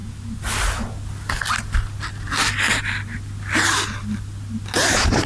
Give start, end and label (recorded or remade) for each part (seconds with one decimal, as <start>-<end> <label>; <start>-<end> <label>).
0.0-5.3 recorded

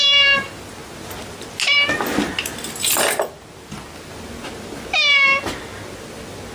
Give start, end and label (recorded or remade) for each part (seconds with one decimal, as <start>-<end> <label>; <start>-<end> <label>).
0.0-6.5 recorded